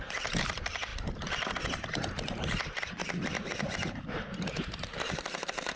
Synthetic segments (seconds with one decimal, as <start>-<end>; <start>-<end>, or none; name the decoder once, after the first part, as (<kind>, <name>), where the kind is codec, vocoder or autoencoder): 0.0-5.8 (vocoder, BigVGAN v2)